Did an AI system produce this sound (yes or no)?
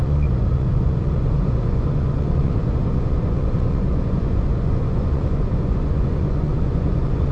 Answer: yes